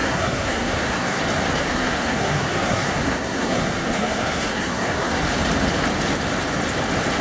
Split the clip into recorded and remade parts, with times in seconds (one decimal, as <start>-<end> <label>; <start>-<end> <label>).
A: 0.0-1.2 remade; 1.2-1.7 recorded; 1.7-5.2 remade; 5.2-7.2 recorded